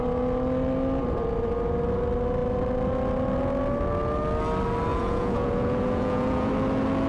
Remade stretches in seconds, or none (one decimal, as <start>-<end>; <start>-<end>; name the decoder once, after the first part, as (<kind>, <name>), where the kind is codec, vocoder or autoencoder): 4.9-6.5 (vocoder, Vocos)